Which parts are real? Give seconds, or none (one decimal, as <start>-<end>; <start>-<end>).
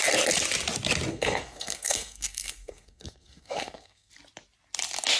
0.0-1.1; 4.1-5.2